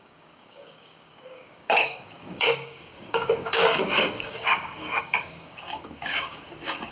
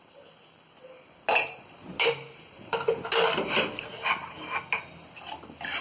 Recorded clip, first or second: second